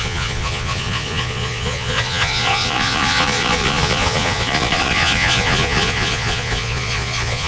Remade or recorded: remade